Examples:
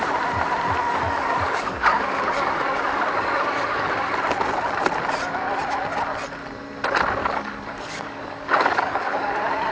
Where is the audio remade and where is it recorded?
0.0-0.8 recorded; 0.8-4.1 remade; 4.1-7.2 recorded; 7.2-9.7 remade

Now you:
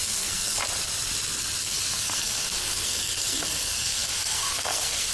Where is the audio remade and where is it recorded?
0.0-0.6 remade; 0.6-1.6 recorded; 1.6-5.1 remade

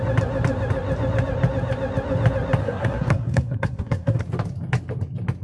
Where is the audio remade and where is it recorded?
0.0-2.6 recorded; 2.6-4.2 remade; 4.2-5.4 recorded

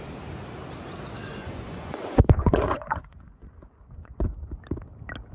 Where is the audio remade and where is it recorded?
0.0-1.3 recorded; 1.3-4.5 remade; 4.5-5.3 recorded

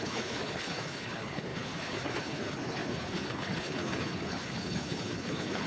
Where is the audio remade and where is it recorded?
0.0-5.7 remade

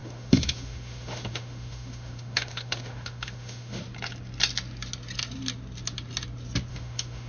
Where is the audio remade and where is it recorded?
0.0-3.8 remade; 3.8-6.7 recorded; 6.7-7.3 remade

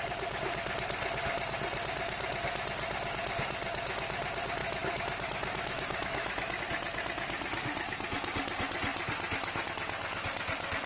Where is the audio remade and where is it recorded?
0.0-4.6 recorded; 4.6-6.6 remade; 6.6-10.9 recorded

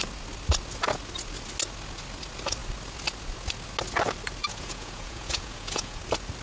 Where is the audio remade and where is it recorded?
0.0-4.4 recorded; 4.4-6.0 remade; 6.0-6.4 recorded